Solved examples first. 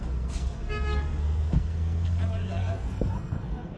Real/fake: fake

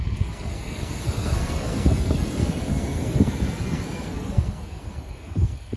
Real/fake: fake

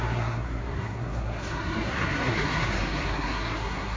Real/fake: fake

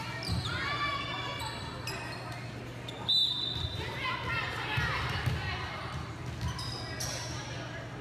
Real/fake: real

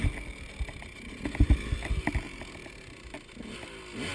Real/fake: real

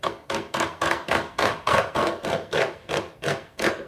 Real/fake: fake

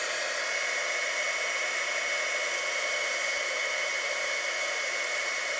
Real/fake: real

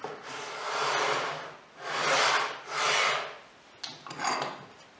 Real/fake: real